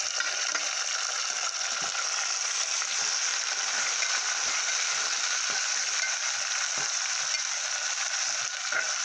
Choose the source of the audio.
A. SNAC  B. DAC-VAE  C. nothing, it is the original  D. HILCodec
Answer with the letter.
C